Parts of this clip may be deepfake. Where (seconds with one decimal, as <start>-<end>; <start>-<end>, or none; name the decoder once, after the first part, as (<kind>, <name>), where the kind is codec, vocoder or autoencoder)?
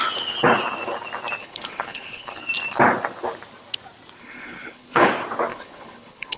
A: 1.4-2.4 (codec, HILCodec); 4.2-5.1; 5.5-6.4